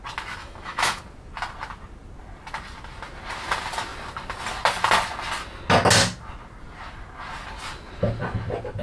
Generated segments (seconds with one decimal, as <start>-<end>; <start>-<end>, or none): 0.4-1.0